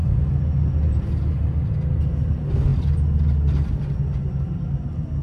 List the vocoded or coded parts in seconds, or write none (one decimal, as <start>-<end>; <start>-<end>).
none